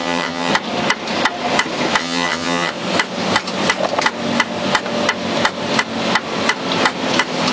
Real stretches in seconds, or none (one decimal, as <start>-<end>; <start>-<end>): 0.5-2.0; 2.7-7.5